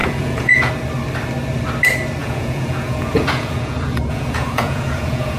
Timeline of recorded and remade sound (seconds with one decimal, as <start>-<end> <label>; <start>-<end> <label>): 0.0-0.7 remade; 0.7-2.2 recorded; 2.2-5.4 remade